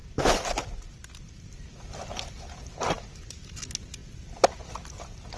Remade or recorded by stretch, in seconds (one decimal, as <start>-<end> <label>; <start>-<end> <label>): 0.0-5.4 recorded